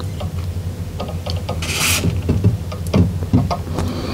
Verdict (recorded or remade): recorded